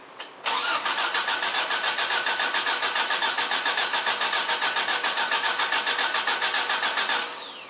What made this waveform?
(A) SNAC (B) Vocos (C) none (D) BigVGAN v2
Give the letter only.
C